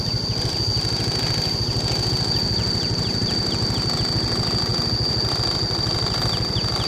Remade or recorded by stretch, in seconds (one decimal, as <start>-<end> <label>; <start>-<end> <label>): 0.0-6.9 recorded